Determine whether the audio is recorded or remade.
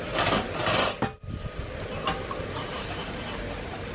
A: recorded